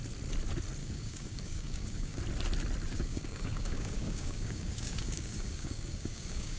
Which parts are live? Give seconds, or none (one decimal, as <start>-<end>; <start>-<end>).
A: 0.0-0.8; 2.2-2.9